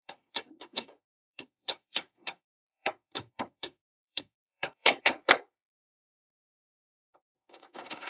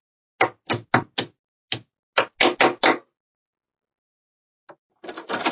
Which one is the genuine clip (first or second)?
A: second